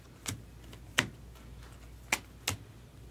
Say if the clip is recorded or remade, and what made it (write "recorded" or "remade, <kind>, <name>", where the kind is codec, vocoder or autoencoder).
recorded